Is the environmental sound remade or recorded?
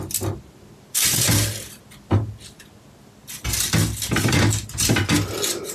recorded